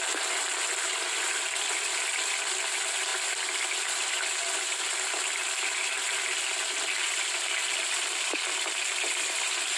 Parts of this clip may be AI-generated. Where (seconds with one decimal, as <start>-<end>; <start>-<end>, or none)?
none